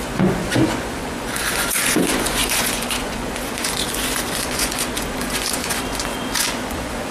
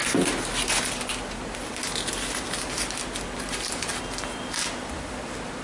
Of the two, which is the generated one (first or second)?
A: first